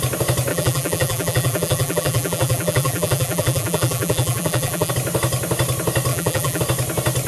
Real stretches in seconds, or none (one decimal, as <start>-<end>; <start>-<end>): 0.0-0.5; 4.9-6.1; 6.6-7.3